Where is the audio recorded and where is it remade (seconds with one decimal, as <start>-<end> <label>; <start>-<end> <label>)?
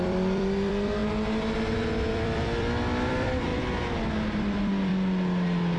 0.0-1.0 remade; 1.0-2.1 recorded; 2.1-3.5 remade; 3.5-4.4 recorded; 4.4-4.9 remade; 4.9-5.8 recorded